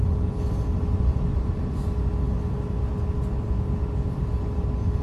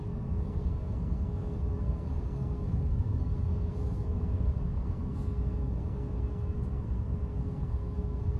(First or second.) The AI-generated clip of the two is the second